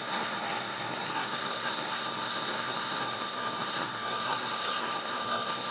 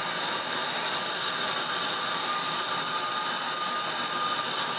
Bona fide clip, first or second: second